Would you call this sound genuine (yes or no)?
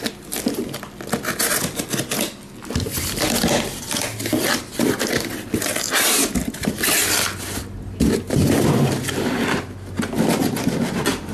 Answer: yes